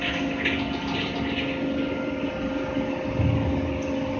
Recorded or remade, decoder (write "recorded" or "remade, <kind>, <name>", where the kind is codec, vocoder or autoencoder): recorded